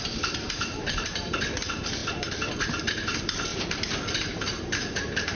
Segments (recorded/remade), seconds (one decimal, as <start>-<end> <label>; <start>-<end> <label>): 0.0-3.5 remade; 3.5-4.1 recorded; 4.1-5.3 remade